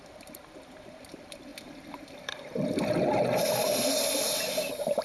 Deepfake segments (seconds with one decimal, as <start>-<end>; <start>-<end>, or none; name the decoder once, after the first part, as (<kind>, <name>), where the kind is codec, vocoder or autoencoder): 1.5-3.8 (vocoder, BigVGAN v2)